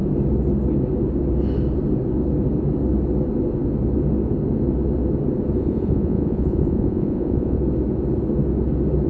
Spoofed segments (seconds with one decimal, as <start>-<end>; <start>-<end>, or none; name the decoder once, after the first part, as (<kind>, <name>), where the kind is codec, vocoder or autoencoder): 5.6-7.6 (vocoder, Vocos)